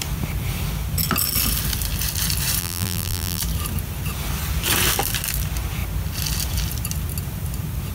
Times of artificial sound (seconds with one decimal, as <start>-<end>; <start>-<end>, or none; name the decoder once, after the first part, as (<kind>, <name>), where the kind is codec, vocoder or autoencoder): 2.6-3.4 (vocoder, BigVGAN v2)